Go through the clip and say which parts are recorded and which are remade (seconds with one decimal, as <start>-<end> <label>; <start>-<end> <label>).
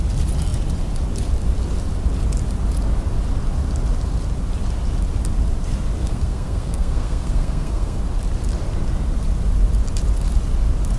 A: 0.0-6.0 recorded; 6.0-8.0 remade; 8.0-11.0 recorded